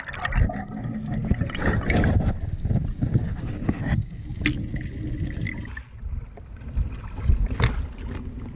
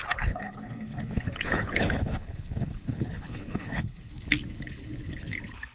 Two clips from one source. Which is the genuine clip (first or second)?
first